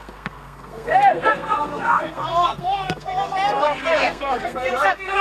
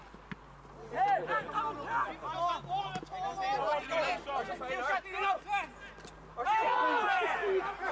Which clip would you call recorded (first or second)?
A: second